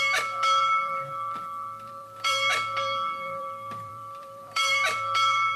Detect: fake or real fake